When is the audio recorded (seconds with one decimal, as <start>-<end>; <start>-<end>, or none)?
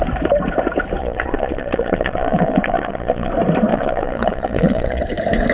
0.0-1.0; 3.3-3.7; 5.0-5.5